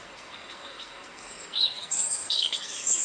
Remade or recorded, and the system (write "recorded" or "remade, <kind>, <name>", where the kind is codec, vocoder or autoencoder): remade, codec, SNAC